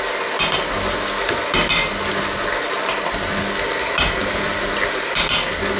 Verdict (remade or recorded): recorded